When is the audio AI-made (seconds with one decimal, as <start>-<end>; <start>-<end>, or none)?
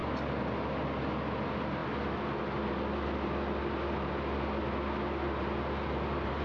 none